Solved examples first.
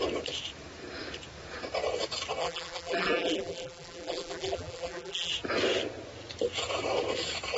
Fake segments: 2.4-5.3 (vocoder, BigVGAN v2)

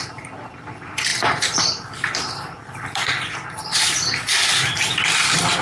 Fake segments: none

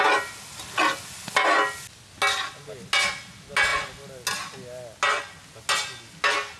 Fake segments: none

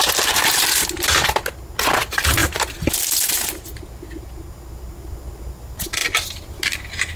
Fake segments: none

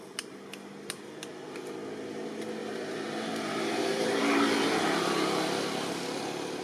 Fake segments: 2.6-4.2 (vocoder, BigVGAN v2)

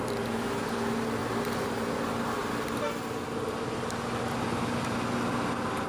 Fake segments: 1.2-2.0 (vocoder, BigVGAN v2)